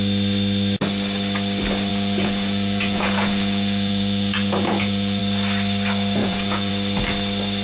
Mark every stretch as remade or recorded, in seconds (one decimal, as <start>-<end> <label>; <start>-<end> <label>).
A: 0.0-1.9 recorded; 1.9-5.2 remade; 5.2-6.2 recorded; 6.2-6.7 remade; 6.7-7.6 recorded